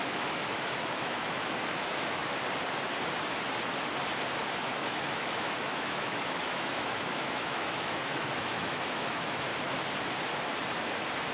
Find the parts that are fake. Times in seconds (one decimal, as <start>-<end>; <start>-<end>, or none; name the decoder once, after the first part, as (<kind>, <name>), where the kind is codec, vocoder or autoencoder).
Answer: 0.0-2.3 (autoencoder, DAC-VAE); 4.6-9.5

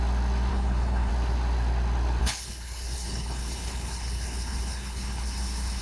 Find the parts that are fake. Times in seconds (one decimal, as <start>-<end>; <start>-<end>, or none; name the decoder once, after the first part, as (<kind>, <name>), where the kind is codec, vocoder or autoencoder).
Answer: 0.5-1.1 (codec, HILCodec); 2.2-5.8

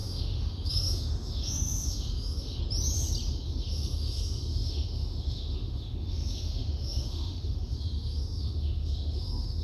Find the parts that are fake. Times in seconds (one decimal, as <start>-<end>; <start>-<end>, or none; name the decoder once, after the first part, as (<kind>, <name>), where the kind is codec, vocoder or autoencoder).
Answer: 0.0-2.6 (autoencoder, DAC-VAE); 3.3-9.6

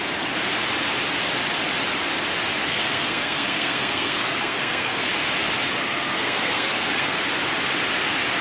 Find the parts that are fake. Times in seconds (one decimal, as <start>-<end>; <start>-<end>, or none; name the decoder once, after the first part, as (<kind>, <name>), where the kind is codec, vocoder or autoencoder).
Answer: 2.6-5.1 (codec, SNAC); 5.8-7.2